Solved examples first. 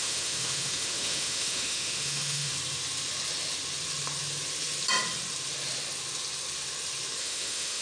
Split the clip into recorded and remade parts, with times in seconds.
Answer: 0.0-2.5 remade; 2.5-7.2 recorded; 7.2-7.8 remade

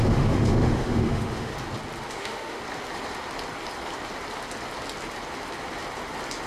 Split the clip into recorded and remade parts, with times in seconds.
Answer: 0.0-1.5 remade; 1.5-2.1 recorded; 2.1-2.6 remade; 2.6-6.5 recorded

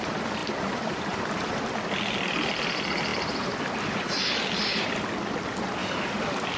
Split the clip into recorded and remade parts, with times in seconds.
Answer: 0.0-0.4 recorded; 0.4-1.6 remade; 1.6-5.8 recorded; 5.8-6.6 remade

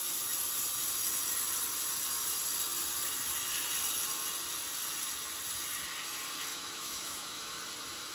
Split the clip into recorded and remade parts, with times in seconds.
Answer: 0.0-6.5 recorded; 6.5-7.6 remade; 7.6-8.1 recorded

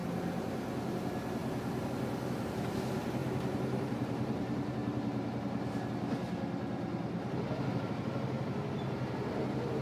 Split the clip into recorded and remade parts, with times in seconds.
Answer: 0.0-1.4 recorded; 1.4-1.9 remade; 1.9-3.2 recorded; 3.2-5.9 remade; 5.9-9.8 recorded

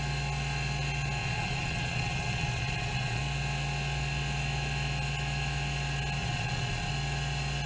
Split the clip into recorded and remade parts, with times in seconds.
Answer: 0.0-1.2 recorded; 1.2-3.2 remade; 3.2-6.2 recorded; 6.2-6.9 remade; 6.9-7.7 recorded